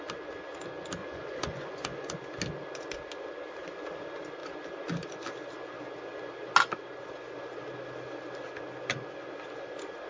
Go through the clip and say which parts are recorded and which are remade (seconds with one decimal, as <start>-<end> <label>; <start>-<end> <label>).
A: 0.0-1.0 recorded; 1.0-2.1 remade; 2.1-10.1 recorded